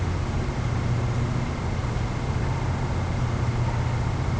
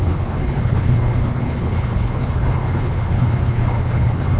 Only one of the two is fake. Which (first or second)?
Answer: second